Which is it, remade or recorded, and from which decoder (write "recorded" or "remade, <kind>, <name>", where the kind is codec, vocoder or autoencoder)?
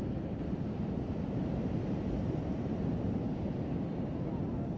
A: recorded